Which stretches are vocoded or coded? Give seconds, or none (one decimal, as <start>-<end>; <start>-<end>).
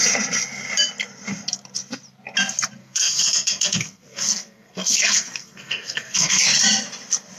2.8-6.4